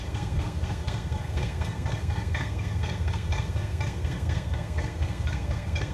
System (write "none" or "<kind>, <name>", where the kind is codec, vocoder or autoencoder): codec, SNAC